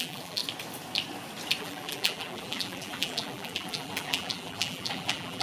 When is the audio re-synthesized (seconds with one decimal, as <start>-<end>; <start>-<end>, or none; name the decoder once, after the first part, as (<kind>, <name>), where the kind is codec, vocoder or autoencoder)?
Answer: 0.0-0.4 (vocoder, BigVGAN v2); 1.6-5.4